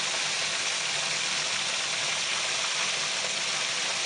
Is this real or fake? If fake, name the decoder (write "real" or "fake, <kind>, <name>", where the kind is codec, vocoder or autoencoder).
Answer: real